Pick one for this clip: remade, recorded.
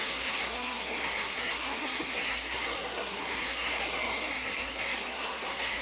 remade